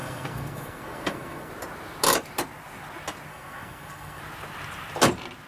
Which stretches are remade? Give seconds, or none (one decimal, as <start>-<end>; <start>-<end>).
0.0-1.5; 3.3-4.2